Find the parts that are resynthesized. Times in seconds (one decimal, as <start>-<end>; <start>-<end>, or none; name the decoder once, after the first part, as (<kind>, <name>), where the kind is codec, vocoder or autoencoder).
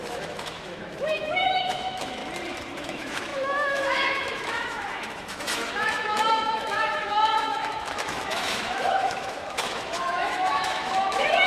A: 0.0-2.2 (autoencoder, DAC-VAE); 2.8-11.5